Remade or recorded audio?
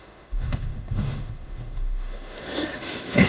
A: remade